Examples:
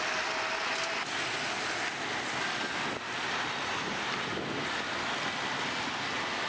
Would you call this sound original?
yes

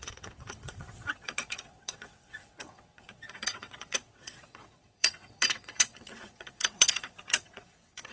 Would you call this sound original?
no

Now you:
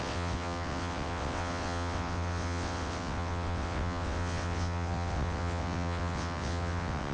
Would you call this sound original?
no